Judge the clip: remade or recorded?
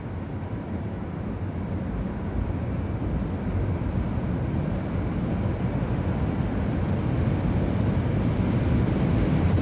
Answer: recorded